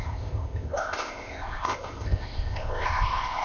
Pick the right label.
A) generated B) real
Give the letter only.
A